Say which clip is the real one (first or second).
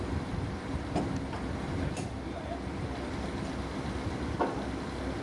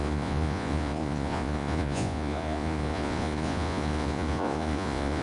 first